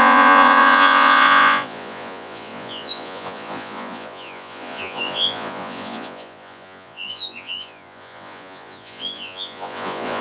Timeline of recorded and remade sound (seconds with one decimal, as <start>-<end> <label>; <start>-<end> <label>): 0.0-10.2 remade